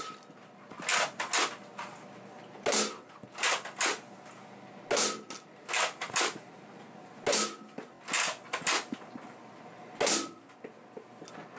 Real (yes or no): yes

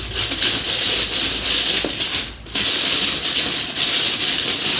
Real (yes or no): yes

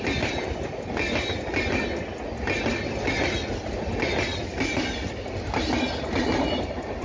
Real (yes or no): yes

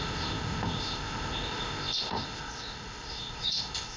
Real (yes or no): no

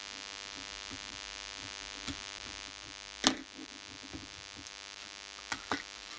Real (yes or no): yes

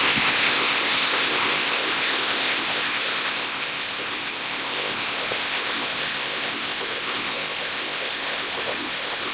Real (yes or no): no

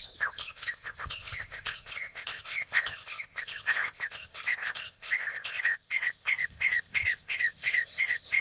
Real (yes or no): no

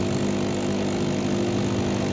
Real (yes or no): yes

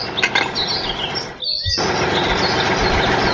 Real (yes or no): yes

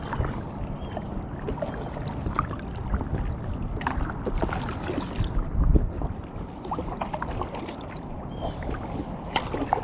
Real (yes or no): yes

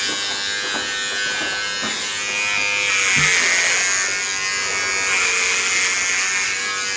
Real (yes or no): yes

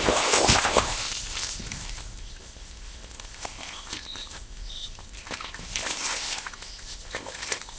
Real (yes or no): no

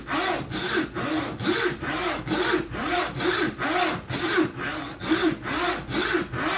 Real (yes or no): yes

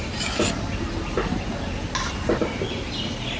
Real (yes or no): yes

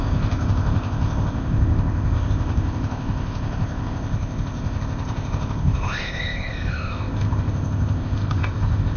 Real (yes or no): no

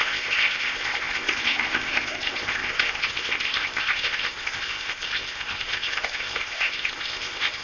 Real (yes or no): no